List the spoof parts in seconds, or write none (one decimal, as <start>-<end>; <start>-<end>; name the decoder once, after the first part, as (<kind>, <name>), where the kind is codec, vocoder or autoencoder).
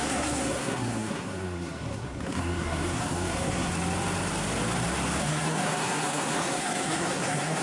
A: 0.0-3.7 (codec, SNAC); 5.2-7.6